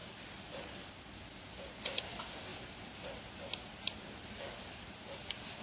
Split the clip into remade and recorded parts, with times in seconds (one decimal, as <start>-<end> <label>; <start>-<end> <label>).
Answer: 0.0-2.5 remade; 2.5-4.4 recorded; 4.4-5.6 remade